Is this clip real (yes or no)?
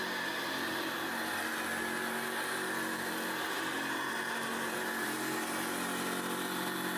yes